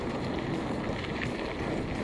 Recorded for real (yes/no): yes